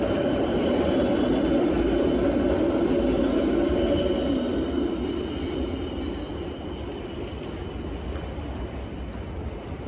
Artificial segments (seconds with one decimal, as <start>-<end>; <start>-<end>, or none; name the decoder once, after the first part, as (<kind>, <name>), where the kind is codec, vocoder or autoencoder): none